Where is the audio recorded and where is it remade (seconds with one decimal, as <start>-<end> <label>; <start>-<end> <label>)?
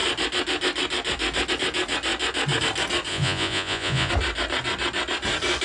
0.0-3.1 recorded; 3.1-4.1 remade; 4.1-5.6 recorded